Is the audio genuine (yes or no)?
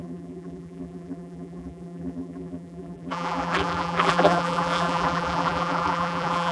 no